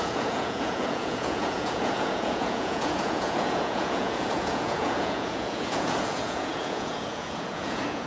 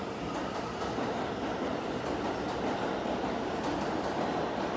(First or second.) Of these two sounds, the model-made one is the first